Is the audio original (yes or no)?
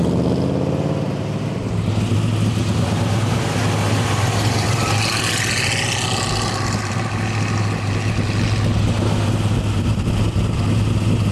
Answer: yes